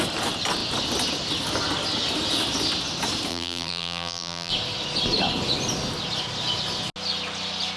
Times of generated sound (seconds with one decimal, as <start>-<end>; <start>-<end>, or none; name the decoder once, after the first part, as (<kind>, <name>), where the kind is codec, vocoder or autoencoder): 3.3-4.5 (vocoder, BigVGAN v2)